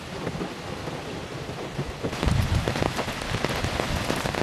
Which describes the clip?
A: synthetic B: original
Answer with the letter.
B